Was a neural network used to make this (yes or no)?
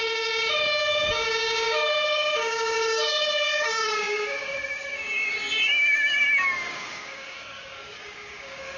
yes